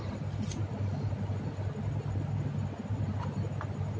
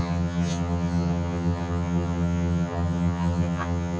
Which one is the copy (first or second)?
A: second